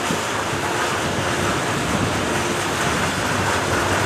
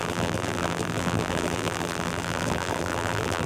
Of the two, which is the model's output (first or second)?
second